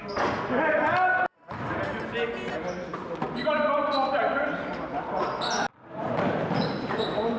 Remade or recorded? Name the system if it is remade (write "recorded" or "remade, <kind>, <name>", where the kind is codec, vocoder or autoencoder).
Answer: recorded